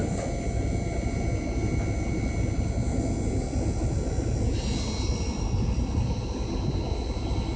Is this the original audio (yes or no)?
yes